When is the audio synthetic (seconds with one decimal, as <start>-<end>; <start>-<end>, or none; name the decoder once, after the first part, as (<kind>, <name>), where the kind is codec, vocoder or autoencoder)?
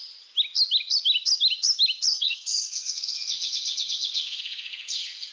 2.1-5.3 (codec, SNAC)